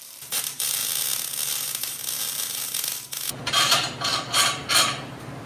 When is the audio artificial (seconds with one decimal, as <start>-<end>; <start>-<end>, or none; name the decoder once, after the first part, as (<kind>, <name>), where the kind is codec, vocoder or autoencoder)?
0.0-0.8 (vocoder, BigVGAN v2); 1.5-2.0; 3.5-5.5